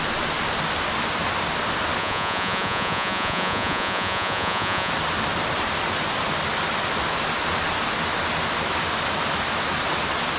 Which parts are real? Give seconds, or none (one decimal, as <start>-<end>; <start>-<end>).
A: 0.0-2.0; 4.9-10.4